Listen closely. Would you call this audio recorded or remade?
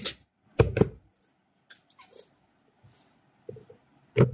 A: recorded